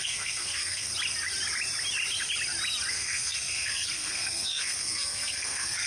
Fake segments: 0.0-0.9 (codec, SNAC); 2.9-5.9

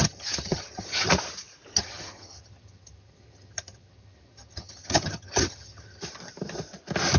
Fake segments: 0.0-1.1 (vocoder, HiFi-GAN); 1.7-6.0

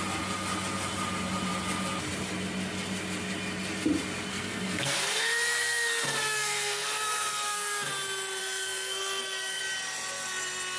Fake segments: 4.3-7.9 (codec, SNAC); 8.4-9.6

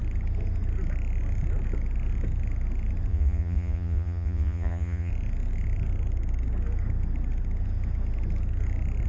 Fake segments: 3.1-5.1 (vocoder, Vocos)

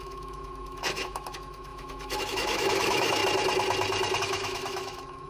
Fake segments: 0.0-3.2 (autoencoder, DAC-VAE); 4.2-5.3

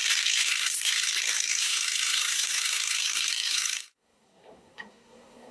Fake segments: 0.0-5.5 (codec, SNAC)

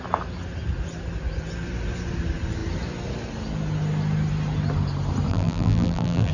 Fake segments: 5.3-6.3 (vocoder, BigVGAN v2)

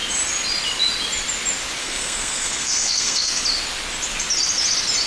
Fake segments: 1.8-3.4 (codec, SNAC)